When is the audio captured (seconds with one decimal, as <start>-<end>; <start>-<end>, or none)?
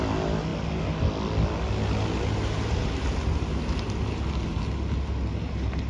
0.0-5.9